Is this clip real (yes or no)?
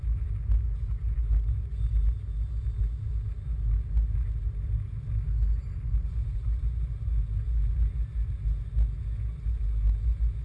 yes